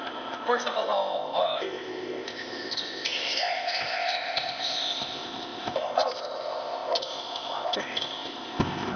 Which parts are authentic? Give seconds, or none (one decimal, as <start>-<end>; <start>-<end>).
none